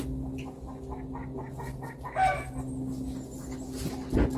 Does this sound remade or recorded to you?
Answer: recorded